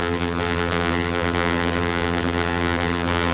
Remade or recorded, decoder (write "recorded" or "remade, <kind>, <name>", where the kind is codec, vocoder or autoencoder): remade, vocoder, BigVGAN v2